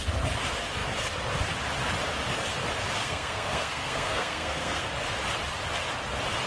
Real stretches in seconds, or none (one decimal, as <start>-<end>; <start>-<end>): 0.0-3.0; 4.9-6.5

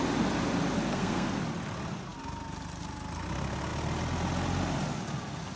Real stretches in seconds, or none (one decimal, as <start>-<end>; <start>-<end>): 0.0-0.9; 1.4-5.6

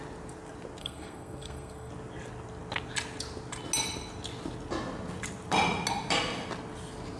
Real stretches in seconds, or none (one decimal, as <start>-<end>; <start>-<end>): 0.0-0.8; 1.9-7.2